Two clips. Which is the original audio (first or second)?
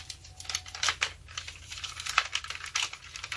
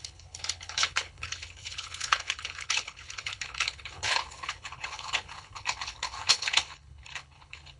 first